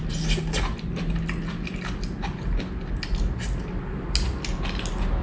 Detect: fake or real real